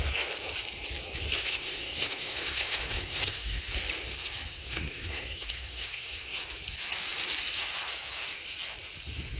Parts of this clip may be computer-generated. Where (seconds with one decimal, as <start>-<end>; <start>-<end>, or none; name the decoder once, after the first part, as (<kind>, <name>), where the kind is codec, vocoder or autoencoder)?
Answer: 1.4-3.6 (codec, SNAC); 4.6-6.4